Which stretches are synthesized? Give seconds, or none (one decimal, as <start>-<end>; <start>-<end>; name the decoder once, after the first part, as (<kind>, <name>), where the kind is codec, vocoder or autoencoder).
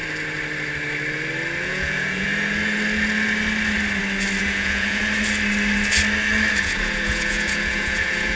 1.6-2.3 (vocoder, Vocos); 4.4-5.0; 6.5-8.4